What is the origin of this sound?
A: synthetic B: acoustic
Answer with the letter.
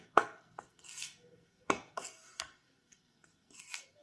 A